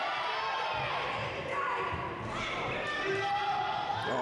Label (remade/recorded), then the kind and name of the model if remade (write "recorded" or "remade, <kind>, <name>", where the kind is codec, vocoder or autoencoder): recorded